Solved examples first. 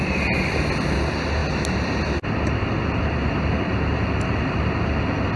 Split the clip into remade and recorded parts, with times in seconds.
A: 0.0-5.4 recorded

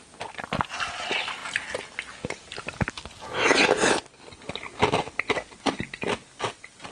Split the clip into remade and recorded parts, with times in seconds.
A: 0.0-6.9 recorded

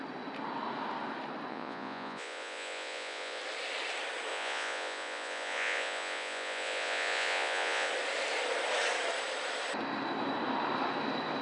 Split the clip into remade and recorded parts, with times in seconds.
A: 0.0-1.5 recorded; 1.5-3.4 remade; 3.4-4.3 recorded; 4.3-7.9 remade; 7.9-11.4 recorded

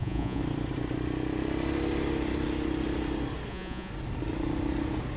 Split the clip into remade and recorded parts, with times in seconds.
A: 0.0-0.4 remade; 0.4-3.5 recorded; 3.5-3.9 remade; 3.9-5.2 recorded